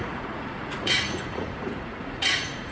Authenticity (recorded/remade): remade